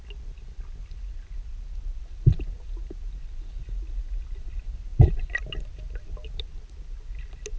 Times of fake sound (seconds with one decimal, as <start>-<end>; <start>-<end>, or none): none